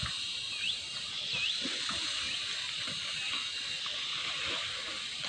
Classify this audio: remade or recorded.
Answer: recorded